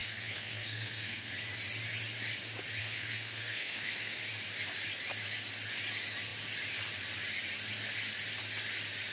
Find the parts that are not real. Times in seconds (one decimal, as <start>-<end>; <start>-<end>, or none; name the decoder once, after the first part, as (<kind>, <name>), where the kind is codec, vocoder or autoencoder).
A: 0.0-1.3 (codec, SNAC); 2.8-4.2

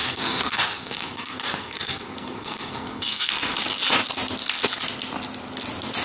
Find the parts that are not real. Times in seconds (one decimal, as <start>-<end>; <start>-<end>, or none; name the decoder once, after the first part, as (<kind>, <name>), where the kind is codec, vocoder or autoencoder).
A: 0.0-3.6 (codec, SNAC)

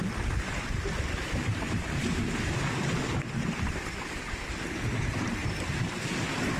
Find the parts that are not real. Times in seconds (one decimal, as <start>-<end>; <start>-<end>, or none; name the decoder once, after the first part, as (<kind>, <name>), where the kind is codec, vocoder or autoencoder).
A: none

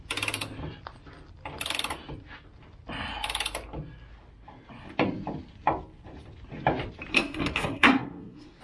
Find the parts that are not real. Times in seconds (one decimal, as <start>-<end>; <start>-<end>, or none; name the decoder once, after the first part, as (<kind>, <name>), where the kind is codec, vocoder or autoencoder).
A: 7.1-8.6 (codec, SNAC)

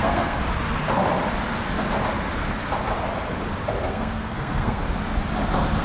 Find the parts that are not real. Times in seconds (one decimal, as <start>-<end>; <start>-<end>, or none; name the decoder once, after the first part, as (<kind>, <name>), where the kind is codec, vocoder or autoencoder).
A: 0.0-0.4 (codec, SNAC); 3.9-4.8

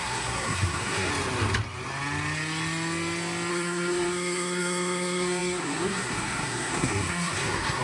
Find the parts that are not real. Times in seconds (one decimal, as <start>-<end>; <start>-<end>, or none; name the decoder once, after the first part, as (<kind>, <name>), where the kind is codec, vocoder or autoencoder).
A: 0.0-1.1 (codec, SNAC); 3.5-7.8

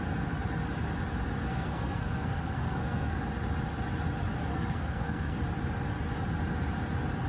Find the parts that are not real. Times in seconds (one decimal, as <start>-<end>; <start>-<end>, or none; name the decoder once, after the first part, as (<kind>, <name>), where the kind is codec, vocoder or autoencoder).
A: 1.5-3.2 (codec, SNAC); 4.5-5.4